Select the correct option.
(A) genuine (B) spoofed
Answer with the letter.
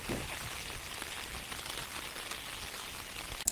A